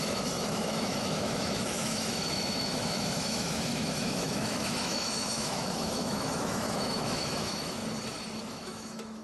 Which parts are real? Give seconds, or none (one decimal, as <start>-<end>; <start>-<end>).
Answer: 7.8-8.4